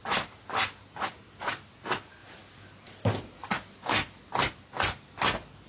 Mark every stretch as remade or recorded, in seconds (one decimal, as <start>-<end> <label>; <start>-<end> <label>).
0.0-5.7 recorded